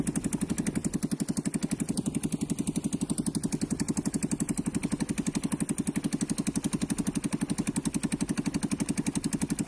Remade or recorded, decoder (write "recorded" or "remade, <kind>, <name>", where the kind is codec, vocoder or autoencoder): recorded